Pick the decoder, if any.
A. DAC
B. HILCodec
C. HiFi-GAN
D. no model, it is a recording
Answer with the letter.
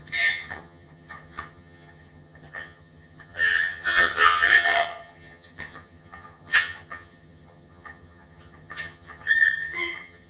C